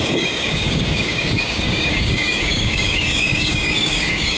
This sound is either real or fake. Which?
fake